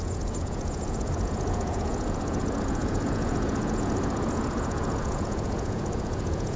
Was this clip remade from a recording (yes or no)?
yes